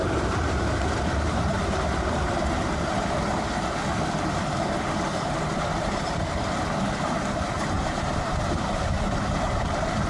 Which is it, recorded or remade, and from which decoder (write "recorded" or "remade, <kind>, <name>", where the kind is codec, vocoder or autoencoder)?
remade, vocoder, BigVGAN v2